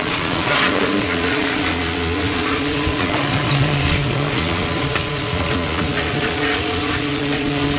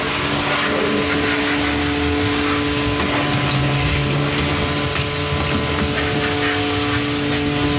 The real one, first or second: second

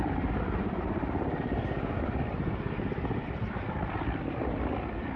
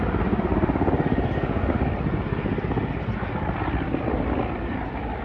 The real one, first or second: second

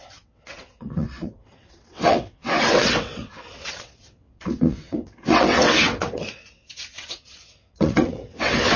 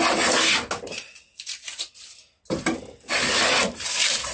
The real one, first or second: second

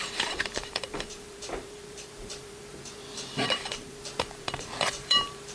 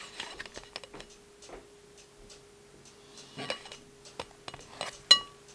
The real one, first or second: second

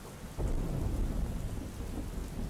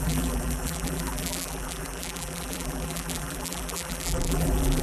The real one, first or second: first